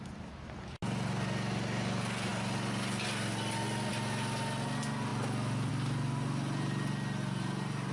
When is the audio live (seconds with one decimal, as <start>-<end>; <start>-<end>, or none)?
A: 0.0-7.9